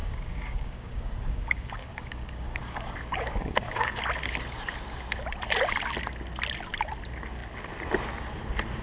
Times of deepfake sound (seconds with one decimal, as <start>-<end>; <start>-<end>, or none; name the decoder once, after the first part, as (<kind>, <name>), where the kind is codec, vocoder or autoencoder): 0.0-4.0 (codec, DAC)